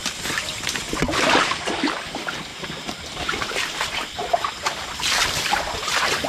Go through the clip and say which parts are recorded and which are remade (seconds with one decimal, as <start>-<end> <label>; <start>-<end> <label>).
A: 0.0-2.5 recorded; 2.5-4.3 remade; 4.3-6.3 recorded